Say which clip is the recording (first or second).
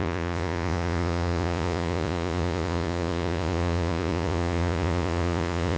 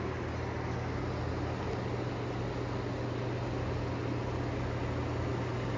second